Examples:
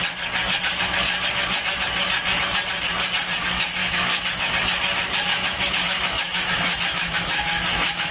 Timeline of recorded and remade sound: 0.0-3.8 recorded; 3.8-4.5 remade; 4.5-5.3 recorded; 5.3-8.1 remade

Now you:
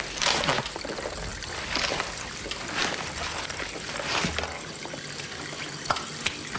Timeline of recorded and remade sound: 0.0-6.6 recorded

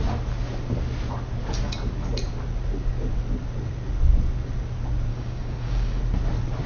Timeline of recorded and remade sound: 0.0-5.1 recorded; 5.1-6.0 remade; 6.0-6.7 recorded

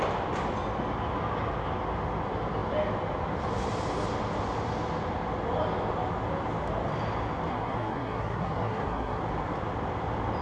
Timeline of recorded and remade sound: 0.0-7.5 recorded; 7.5-9.2 remade; 9.2-10.4 recorded

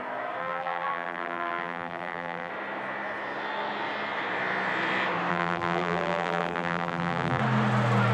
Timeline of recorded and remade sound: 0.0-0.4 recorded; 0.4-2.5 remade; 2.5-5.3 recorded; 5.3-7.4 remade; 7.4-8.1 recorded

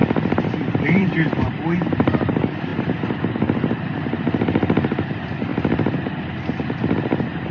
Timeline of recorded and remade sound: 0.0-1.6 remade; 1.6-5.5 recorded; 5.5-6.0 remade; 6.0-7.5 recorded

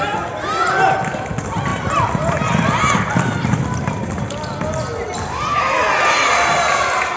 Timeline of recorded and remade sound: 0.0-7.2 recorded